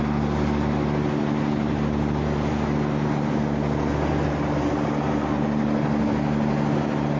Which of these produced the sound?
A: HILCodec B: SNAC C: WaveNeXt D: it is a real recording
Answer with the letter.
D